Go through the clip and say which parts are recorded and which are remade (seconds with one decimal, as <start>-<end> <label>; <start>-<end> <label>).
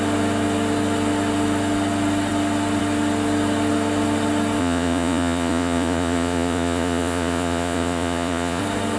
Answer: 0.0-4.6 recorded; 4.6-8.6 remade; 8.6-9.0 recorded